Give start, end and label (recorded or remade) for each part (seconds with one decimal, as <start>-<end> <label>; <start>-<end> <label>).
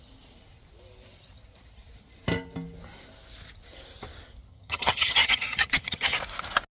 0.0-4.5 recorded; 4.5-6.2 remade; 6.2-6.8 recorded